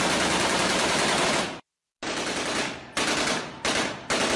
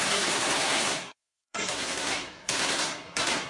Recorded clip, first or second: first